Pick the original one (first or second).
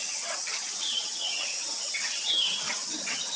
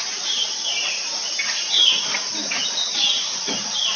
second